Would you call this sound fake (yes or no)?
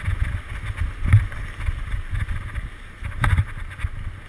no